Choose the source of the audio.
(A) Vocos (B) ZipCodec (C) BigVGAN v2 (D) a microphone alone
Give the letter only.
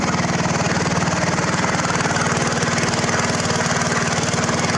D